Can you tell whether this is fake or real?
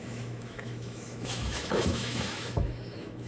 fake